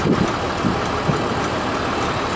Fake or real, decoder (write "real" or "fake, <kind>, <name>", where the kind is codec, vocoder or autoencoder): real